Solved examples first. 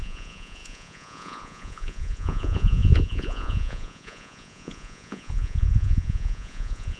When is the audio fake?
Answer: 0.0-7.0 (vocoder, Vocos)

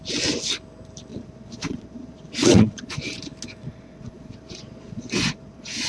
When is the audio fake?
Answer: 1.1-2.9 (vocoder, Vocos); 3.6-5.9

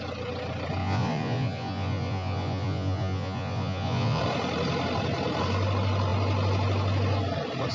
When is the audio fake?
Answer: 0.8-4.2 (vocoder, Vocos)

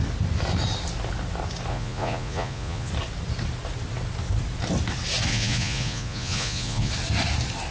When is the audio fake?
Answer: 1.7-2.9 (vocoder, Vocos); 5.3-6.9

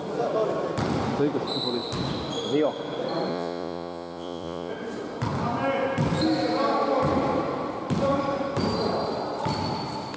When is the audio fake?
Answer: 3.3-4.7 (vocoder, Vocos)

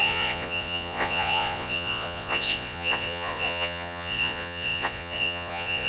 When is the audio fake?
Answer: 0.0-5.9 (vocoder, Vocos)

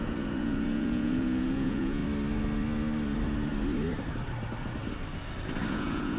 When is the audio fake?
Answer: 0.0-2.0 (vocoder, Vocos); 5.7-6.2

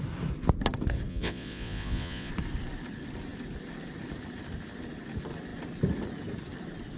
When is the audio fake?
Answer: 1.1-2.3 (vocoder, Vocos)